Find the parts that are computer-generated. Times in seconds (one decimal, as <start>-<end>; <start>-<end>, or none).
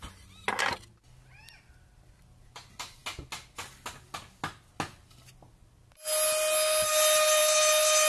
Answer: none